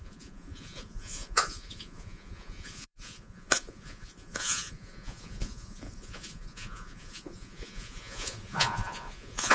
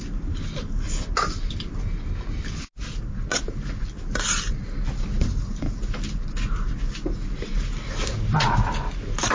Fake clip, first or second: first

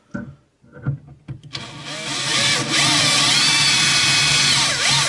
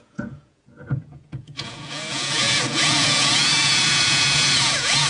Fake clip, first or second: second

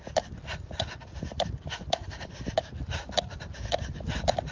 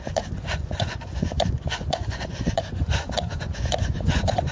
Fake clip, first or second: second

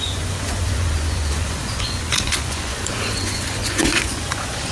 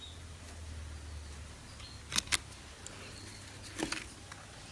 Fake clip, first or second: first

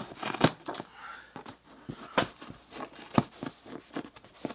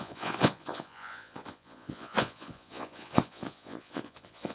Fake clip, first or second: second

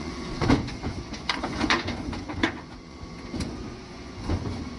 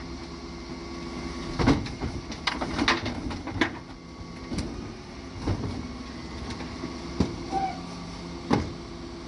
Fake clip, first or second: first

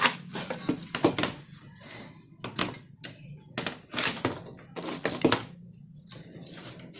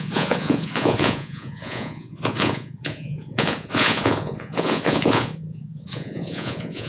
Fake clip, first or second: second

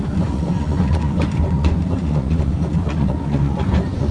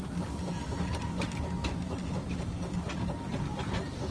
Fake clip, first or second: first